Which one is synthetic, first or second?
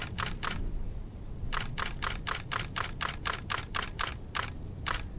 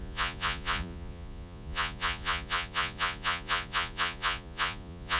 second